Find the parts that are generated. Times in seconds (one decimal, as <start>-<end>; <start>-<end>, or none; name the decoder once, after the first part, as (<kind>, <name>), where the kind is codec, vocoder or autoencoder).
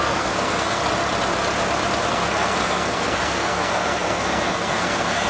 0.0-0.8 (codec, SNAC); 2.1-5.3